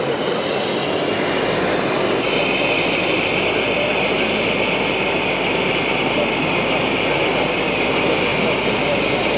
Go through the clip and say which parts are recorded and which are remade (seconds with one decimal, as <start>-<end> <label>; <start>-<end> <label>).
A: 0.0-9.4 recorded